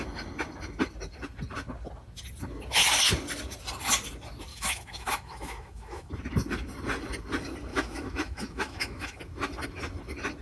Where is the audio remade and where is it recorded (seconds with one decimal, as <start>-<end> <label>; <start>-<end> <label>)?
0.0-4.5 recorded; 4.5-6.1 remade; 6.1-7.7 recorded; 7.7-9.2 remade; 9.2-10.4 recorded

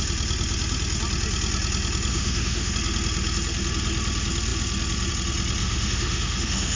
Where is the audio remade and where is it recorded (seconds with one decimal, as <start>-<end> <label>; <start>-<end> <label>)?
0.0-2.1 recorded; 2.1-2.7 remade; 2.7-5.6 recorded; 5.6-6.8 remade

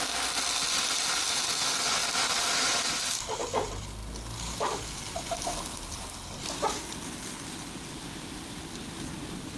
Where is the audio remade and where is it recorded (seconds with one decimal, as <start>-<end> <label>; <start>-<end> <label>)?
0.0-9.6 recorded

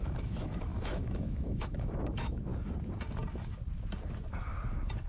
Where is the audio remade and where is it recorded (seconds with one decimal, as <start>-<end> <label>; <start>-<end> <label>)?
0.0-2.5 remade; 2.5-5.1 recorded

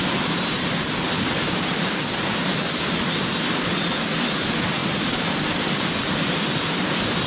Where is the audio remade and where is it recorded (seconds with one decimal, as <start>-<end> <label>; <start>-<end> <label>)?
0.0-7.3 recorded

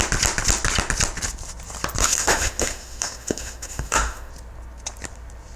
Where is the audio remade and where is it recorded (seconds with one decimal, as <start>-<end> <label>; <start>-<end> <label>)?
0.0-2.0 recorded; 2.0-4.3 remade; 4.3-5.6 recorded

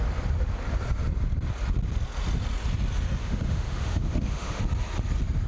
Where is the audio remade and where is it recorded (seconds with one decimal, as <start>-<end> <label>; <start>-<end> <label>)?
0.0-3.2 recorded; 3.2-4.6 remade; 4.6-5.5 recorded

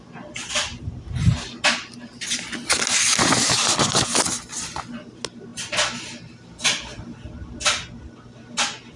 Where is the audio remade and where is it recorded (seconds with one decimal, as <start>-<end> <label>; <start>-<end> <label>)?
0.0-9.0 recorded